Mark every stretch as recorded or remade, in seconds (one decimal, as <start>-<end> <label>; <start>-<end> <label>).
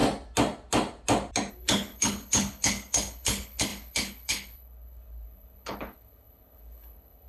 0.0-1.5 recorded; 1.5-7.3 remade